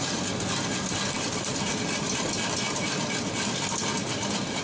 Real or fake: real